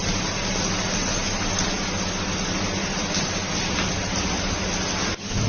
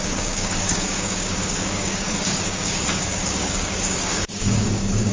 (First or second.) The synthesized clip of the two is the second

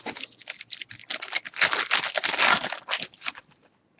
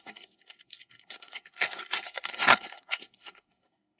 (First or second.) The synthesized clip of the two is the second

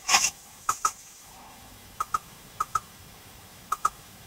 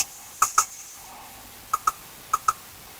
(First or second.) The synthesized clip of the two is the first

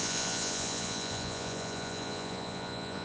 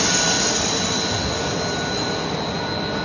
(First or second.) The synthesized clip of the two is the first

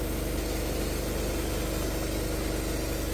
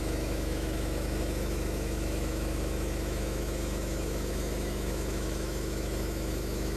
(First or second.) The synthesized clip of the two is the second